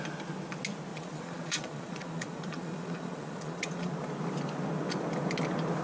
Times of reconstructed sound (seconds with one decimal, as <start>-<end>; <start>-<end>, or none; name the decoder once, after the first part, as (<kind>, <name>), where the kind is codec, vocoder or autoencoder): 0.9-3.9 (vocoder, Vocos)